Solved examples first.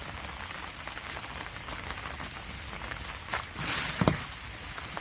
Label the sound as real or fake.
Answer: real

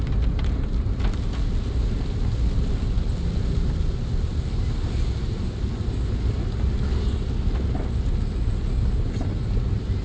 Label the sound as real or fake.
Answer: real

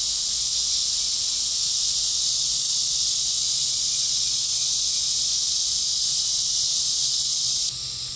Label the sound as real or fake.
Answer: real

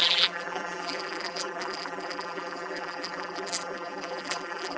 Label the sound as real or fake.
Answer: fake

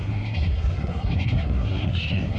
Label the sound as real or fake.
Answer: fake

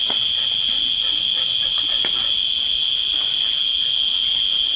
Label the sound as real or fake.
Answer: fake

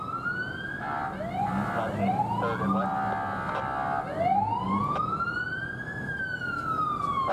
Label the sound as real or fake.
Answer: real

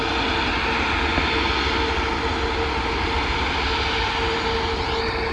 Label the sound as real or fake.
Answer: real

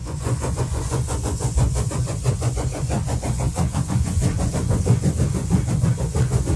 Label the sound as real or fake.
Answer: fake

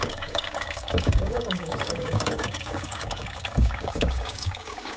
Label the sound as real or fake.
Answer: fake